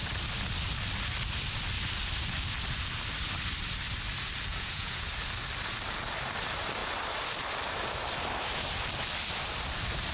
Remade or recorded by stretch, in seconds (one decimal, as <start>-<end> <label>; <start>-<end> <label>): 0.0-4.5 recorded; 4.5-5.1 remade; 5.1-10.1 recorded